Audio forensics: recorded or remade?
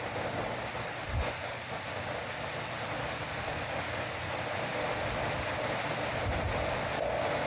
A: recorded